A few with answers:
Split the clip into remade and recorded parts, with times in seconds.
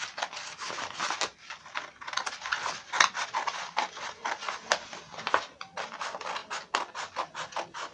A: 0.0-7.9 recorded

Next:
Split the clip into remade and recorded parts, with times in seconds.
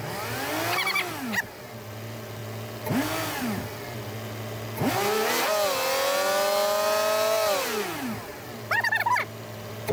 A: 0.0-9.9 recorded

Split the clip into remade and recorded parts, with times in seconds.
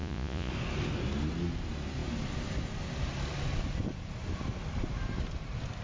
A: 0.0-0.5 remade; 0.5-5.8 recorded